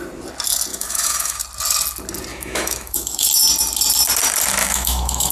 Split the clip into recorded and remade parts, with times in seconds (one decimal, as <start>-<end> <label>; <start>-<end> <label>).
0.0-0.7 recorded; 0.7-1.4 remade; 1.4-2.3 recorded; 2.3-3.3 remade; 3.3-4.6 recorded; 4.6-5.3 remade